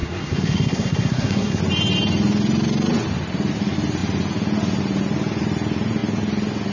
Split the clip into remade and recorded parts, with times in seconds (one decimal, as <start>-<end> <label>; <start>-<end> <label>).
0.0-1.6 remade; 1.6-6.7 recorded